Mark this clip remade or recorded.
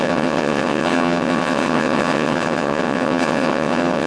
remade